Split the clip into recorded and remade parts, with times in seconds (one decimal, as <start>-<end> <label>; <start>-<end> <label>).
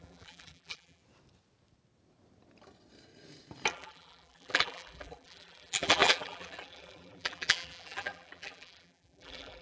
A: 0.0-1.0 remade; 1.0-3.7 recorded; 3.7-9.6 remade